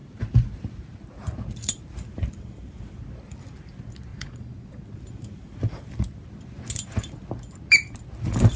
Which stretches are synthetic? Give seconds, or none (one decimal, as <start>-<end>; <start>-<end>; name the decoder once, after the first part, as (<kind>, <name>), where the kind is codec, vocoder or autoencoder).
4.1-4.8 (vocoder, Vocos)